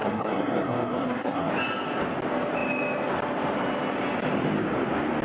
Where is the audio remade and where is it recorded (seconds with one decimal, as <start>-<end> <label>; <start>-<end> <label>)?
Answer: 0.0-1.5 remade; 1.5-5.2 recorded